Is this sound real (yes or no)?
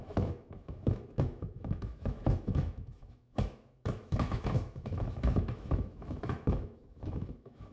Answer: no